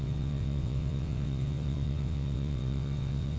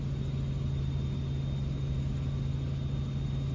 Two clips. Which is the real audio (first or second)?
second